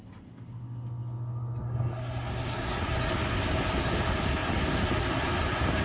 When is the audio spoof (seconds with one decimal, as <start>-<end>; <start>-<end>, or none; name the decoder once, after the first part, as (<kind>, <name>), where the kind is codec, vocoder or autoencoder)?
none